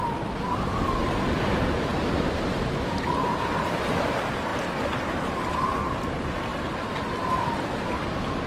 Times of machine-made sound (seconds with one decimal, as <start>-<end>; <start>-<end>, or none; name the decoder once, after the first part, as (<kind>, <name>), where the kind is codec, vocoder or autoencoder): 1.9-2.5 (vocoder, BigVGAN v2)